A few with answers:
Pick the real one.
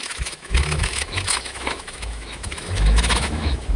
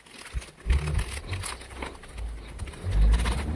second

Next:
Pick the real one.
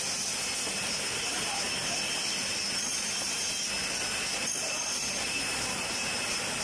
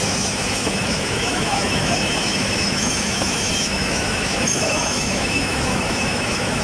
first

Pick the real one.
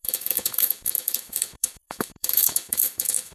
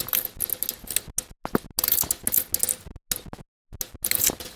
second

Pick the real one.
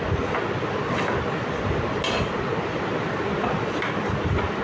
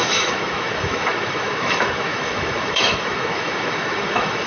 first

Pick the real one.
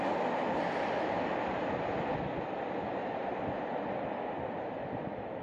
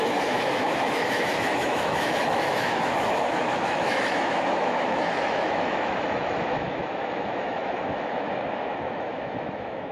first